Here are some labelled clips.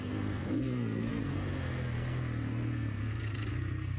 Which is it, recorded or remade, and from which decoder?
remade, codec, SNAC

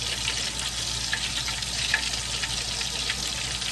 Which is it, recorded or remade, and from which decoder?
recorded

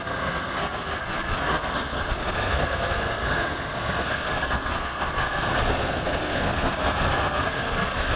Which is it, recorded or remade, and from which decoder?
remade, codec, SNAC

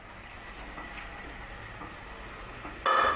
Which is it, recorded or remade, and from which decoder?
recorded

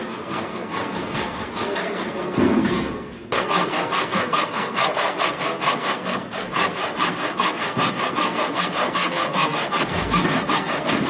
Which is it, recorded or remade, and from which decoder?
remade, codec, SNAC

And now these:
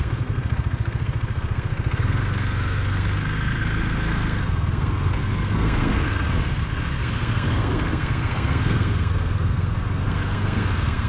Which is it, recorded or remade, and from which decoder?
remade, codec, SNAC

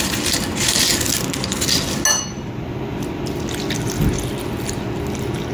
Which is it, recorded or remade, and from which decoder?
recorded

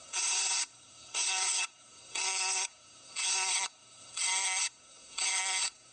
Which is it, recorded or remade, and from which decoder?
remade, codec, SNAC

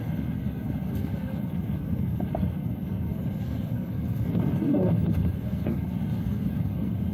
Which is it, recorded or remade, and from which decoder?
remade, codec, SNAC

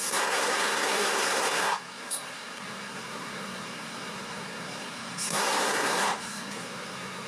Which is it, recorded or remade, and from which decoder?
remade, codec, SNAC